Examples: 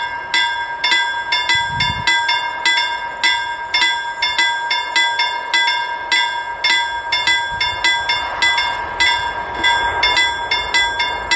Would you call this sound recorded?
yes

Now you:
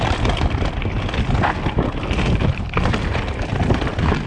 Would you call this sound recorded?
yes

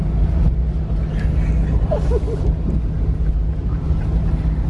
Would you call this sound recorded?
yes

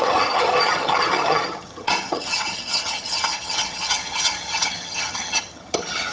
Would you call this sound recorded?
no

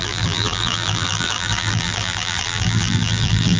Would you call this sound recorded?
no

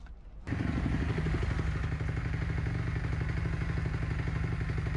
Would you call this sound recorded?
yes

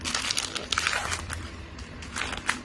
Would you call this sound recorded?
yes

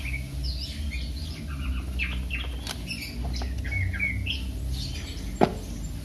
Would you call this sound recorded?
yes